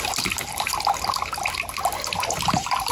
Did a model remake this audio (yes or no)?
no